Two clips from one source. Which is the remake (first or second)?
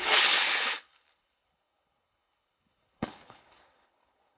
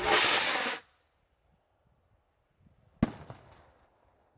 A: first